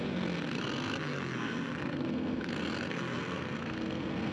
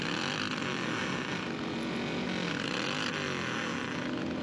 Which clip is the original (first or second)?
second